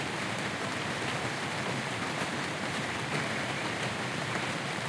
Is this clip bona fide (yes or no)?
no